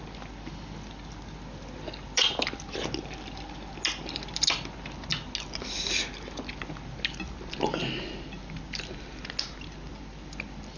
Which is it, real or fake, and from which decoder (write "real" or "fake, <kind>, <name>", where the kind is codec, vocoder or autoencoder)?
real